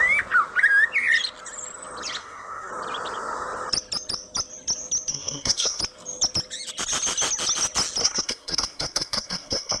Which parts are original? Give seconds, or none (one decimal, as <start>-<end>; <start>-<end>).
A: 0.0-2.2; 2.7-5.1; 5.8-8.0